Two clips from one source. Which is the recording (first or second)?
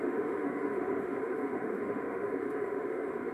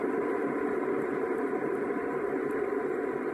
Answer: second